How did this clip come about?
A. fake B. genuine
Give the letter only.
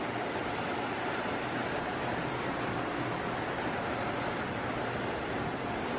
B